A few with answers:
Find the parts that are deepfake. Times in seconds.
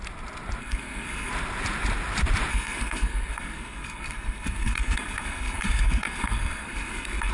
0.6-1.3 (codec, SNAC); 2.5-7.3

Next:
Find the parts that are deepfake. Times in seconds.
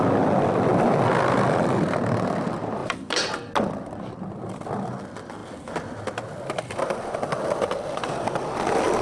2.8-3.5 (vocoder, BigVGAN v2)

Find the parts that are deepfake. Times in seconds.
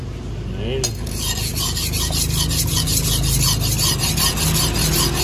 none